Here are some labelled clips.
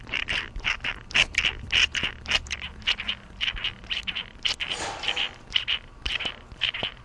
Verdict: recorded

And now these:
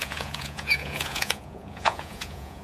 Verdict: remade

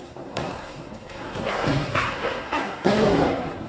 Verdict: remade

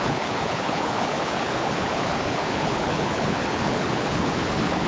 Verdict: remade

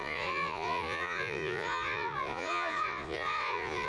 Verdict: remade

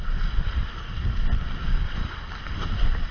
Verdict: recorded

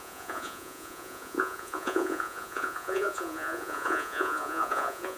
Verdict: remade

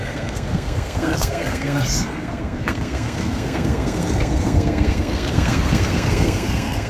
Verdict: remade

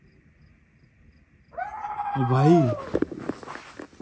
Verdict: recorded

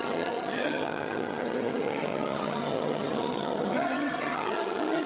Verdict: remade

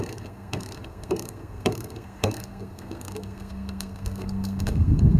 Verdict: remade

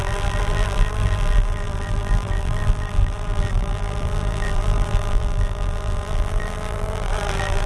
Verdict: remade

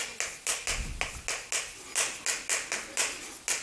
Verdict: recorded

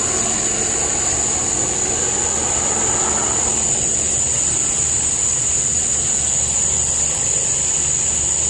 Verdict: recorded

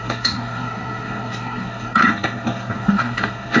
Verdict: remade